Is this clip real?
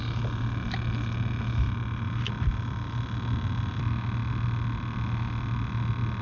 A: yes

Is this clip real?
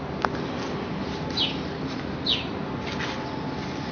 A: yes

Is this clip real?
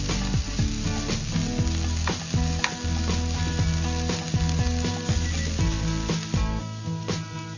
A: yes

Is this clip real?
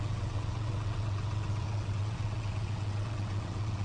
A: no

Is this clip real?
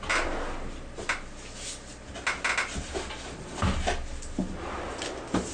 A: yes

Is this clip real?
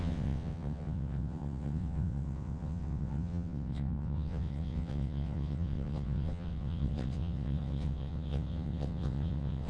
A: no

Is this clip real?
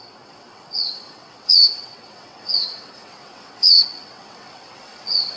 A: no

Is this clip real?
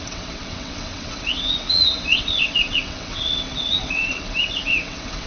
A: no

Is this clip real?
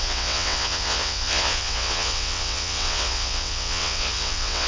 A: no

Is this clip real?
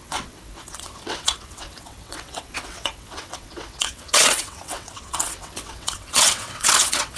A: no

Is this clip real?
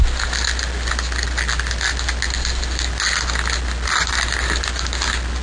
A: yes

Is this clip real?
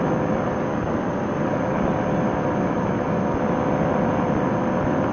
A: yes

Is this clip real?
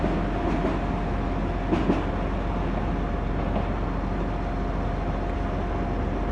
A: yes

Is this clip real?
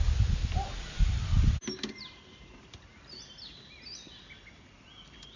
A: yes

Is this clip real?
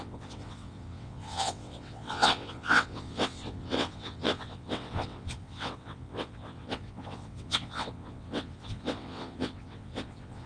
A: no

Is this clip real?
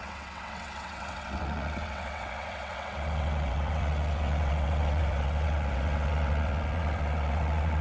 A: no